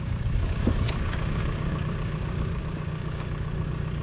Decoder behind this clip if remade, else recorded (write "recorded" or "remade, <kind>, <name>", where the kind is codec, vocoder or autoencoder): remade, codec, DAC